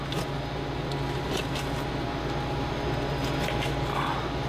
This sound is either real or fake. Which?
real